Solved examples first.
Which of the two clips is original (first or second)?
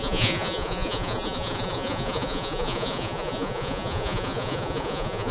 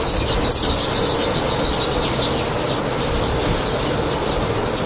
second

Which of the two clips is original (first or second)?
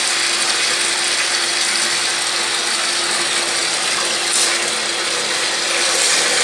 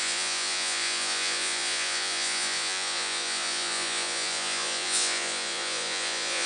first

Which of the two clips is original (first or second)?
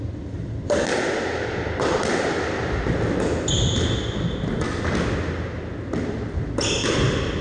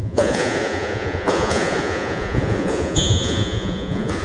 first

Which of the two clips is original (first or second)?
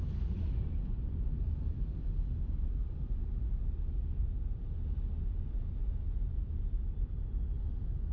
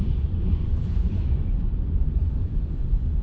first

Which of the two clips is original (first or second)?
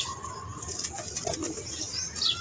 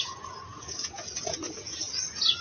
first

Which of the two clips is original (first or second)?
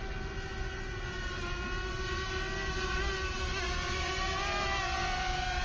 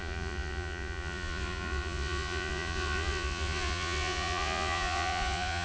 first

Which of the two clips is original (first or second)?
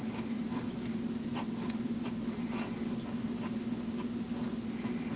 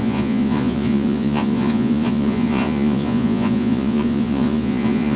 first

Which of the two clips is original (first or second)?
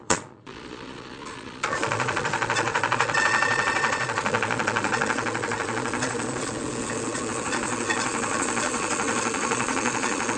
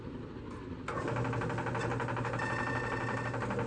second